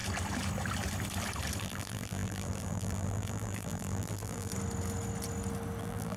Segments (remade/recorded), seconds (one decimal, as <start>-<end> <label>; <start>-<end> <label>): 0.0-1.6 recorded; 1.6-4.5 remade; 4.5-5.8 recorded; 5.8-6.2 remade